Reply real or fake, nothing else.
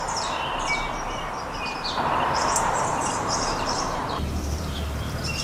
fake